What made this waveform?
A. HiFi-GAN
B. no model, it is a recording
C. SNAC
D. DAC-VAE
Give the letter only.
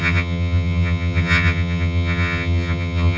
A